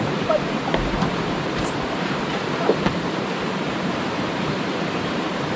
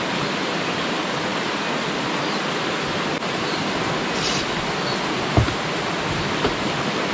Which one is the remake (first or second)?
first